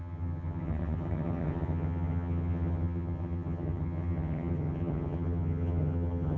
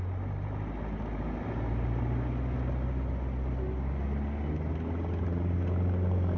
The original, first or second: second